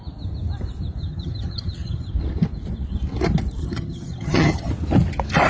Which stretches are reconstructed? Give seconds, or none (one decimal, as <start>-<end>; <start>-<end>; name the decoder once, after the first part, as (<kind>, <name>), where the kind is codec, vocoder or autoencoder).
1.0-2.1 (vocoder, HiFi-GAN); 3.6-4.7